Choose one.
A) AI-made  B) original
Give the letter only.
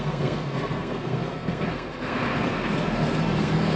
A